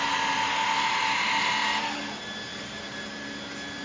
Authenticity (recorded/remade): recorded